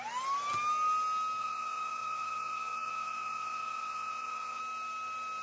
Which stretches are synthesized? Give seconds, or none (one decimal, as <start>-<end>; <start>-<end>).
1.4-4.6